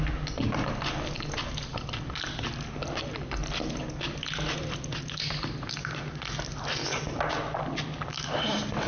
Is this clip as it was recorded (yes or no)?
yes